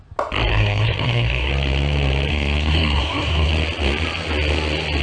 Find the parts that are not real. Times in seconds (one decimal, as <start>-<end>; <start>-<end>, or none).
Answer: 0.5-1.5; 2.3-3.5